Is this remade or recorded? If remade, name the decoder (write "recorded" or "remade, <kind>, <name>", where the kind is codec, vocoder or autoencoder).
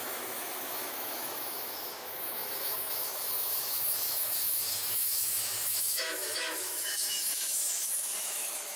remade, autoencoder, DAC-VAE